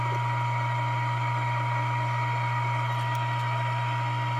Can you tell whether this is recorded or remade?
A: recorded